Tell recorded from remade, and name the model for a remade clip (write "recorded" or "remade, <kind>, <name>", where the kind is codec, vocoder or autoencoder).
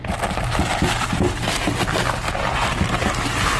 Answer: recorded